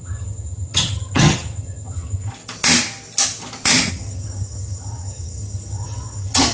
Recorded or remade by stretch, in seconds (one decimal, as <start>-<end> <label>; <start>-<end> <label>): 0.0-2.3 remade; 2.3-3.9 recorded; 3.9-6.5 remade